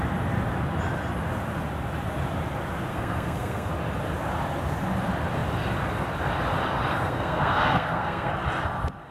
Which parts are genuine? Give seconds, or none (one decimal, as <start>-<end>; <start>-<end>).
0.0-2.9; 3.7-6.9; 8.3-9.1